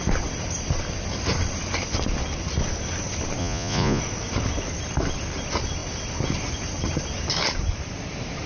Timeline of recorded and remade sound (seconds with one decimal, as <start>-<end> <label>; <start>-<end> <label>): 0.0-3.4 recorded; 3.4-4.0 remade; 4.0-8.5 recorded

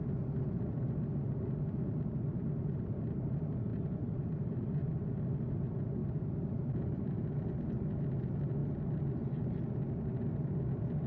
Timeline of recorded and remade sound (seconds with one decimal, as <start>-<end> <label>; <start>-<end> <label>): 0.0-3.7 recorded; 3.7-4.9 remade; 4.9-6.0 recorded; 6.0-6.8 remade; 6.8-8.6 recorded; 8.6-9.6 remade; 9.6-11.1 recorded

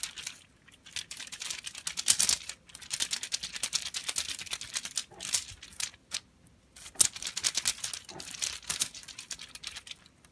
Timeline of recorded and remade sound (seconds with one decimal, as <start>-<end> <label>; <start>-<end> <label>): 0.0-10.3 recorded

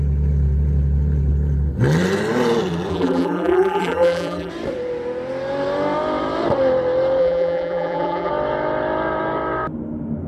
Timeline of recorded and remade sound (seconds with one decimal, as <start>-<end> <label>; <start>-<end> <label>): 0.0-2.9 recorded; 2.9-4.5 remade; 4.5-7.2 recorded; 7.2-8.3 remade; 8.3-10.3 recorded

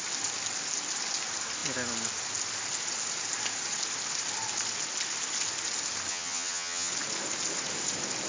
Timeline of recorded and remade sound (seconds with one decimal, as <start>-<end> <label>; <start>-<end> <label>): 0.0-6.1 recorded; 6.1-6.9 remade; 6.9-8.3 recorded

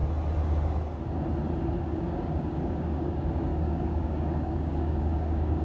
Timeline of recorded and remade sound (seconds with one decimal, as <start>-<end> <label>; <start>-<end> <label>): 0.0-1.8 recorded; 1.8-5.6 remade

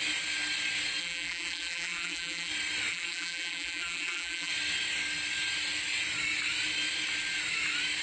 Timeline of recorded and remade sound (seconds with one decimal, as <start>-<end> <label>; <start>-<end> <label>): 0.0-1.0 recorded; 1.0-2.5 remade; 2.5-2.9 recorded; 2.9-4.5 remade; 4.5-8.0 recorded